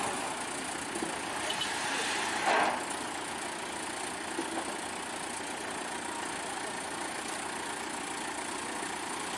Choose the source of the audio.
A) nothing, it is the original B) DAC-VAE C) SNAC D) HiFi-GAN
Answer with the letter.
A